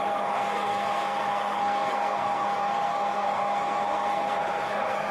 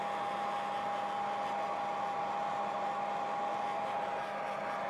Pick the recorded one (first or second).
second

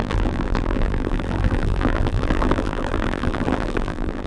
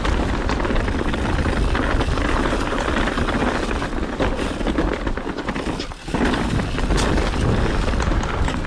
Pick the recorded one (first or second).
second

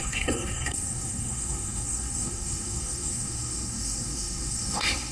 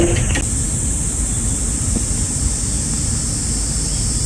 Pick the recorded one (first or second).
second